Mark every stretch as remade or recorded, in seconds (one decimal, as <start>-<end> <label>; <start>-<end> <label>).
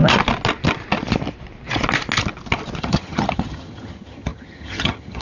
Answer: 0.0-2.8 recorded; 2.8-5.2 remade